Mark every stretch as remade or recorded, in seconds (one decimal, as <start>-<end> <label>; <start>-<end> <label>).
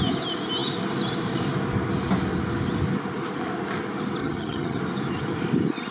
0.0-4.2 recorded; 4.2-4.8 remade; 4.8-5.9 recorded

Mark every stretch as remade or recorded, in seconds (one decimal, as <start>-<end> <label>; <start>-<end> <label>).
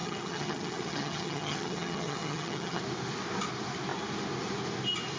0.0-2.8 remade; 2.8-5.2 recorded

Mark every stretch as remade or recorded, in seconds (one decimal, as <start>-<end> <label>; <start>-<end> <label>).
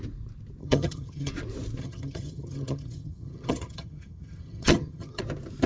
0.0-0.6 recorded; 0.6-1.3 remade; 1.3-1.8 recorded; 1.8-5.2 remade; 5.2-5.7 recorded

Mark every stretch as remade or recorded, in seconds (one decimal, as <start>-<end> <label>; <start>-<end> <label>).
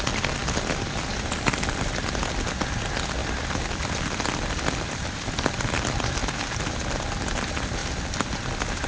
0.0-8.9 recorded